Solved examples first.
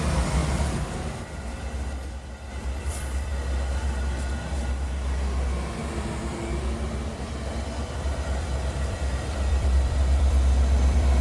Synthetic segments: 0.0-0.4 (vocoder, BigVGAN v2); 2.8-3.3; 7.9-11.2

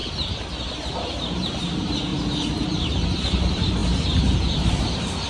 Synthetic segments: 1.0-5.3 (vocoder, BigVGAN v2)

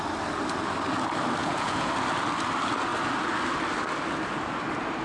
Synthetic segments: 1.4-1.9 (vocoder, Vocos)

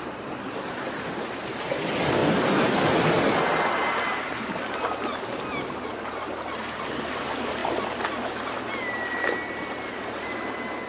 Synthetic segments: none

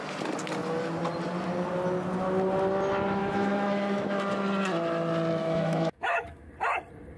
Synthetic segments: 3.2-4.2 (autoencoder, DAC-VAE); 5.4-6.5

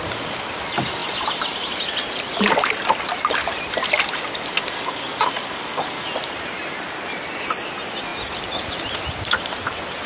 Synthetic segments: none